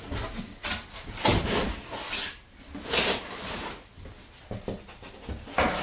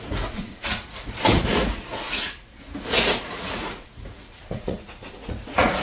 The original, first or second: first